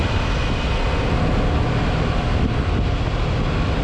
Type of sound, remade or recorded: recorded